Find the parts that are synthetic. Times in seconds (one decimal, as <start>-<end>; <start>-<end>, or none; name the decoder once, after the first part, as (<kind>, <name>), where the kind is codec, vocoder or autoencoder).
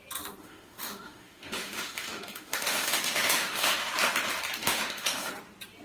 0.4-3.9 (autoencoder, DAC-VAE); 4.6-5.3